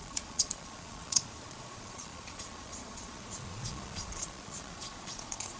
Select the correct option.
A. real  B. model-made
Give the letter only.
B